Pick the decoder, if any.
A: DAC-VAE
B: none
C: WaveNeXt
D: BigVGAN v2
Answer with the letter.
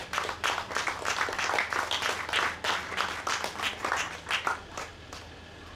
B